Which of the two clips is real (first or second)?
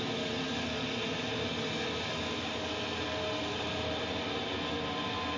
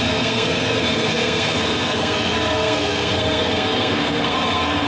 first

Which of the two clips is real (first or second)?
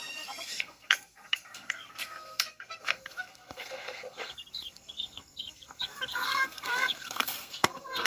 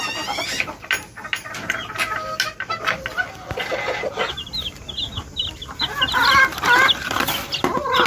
second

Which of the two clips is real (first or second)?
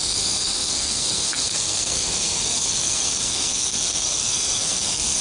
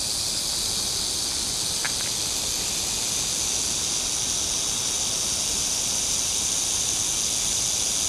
second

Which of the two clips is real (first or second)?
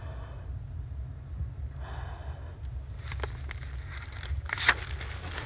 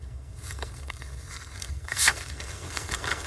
first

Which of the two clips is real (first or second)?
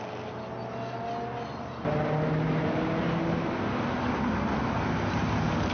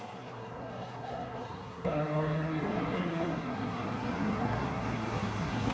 first